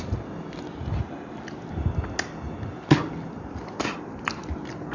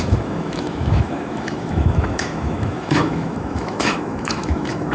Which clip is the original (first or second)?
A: first